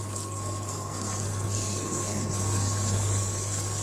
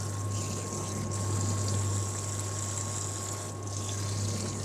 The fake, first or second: first